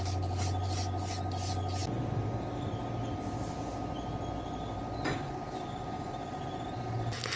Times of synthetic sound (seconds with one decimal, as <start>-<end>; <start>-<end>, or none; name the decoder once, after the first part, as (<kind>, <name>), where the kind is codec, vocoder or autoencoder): none